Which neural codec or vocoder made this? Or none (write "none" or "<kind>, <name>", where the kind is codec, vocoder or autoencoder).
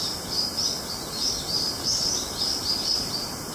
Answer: none